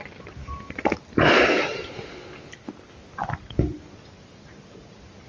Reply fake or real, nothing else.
real